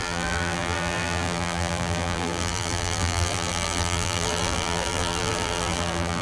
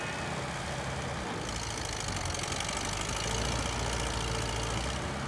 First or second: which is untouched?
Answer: second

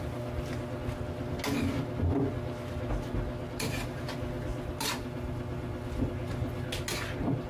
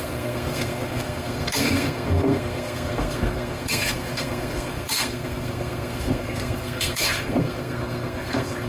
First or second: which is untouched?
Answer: first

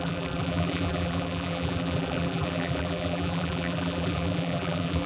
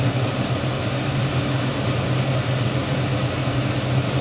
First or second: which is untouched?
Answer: second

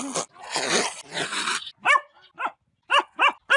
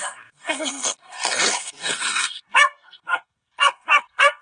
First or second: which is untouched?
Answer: first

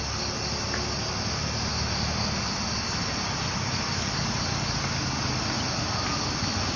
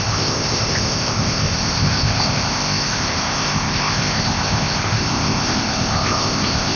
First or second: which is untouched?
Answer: first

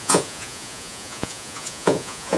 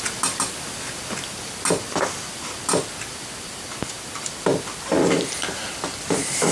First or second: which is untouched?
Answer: second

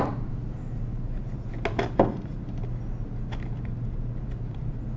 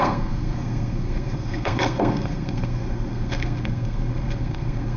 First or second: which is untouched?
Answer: first